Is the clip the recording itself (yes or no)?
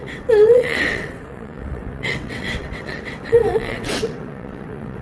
no